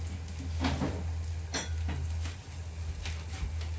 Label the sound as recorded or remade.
recorded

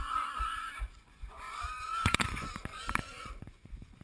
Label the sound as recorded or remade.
remade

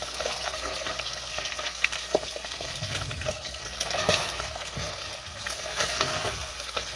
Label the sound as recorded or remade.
remade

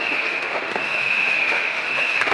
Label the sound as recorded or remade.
remade